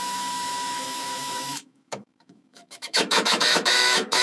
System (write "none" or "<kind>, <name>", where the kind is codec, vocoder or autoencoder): autoencoder, DAC-VAE